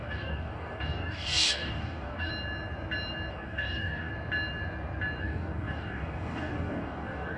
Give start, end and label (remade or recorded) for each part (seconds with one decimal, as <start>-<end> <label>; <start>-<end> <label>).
0.0-2.3 remade; 2.3-3.3 recorded; 3.3-4.1 remade; 4.1-5.2 recorded; 5.2-7.4 remade